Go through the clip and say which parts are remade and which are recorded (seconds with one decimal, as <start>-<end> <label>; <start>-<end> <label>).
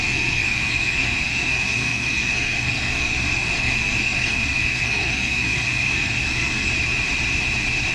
0.0-6.7 remade; 6.7-7.9 recorded